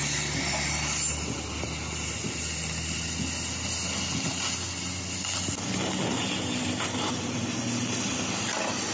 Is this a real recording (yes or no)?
yes